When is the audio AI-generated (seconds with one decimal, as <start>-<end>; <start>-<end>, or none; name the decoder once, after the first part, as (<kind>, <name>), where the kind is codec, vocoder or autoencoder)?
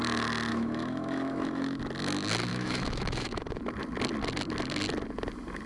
0.5-1.8 (autoencoder, DAC-VAE); 2.5-3.6